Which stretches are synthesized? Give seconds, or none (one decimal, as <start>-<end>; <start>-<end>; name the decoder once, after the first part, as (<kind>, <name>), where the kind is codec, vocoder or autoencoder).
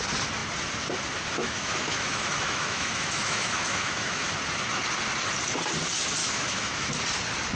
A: 1.4-4.3 (autoencoder, DAC-VAE); 6.2-6.9